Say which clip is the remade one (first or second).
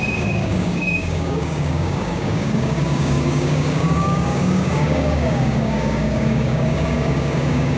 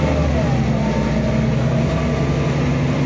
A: first